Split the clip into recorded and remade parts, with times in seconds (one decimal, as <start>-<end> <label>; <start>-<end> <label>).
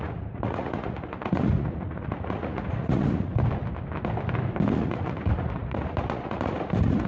0.0-3.3 remade; 3.3-4.7 recorded; 4.7-7.1 remade